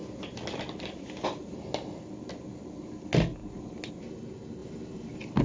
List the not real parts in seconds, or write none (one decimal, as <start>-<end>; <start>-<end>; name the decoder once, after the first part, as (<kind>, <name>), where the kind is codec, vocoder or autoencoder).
none